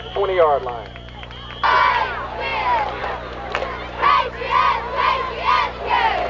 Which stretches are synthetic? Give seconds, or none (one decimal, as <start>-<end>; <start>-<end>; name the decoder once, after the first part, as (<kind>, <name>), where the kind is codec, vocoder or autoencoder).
none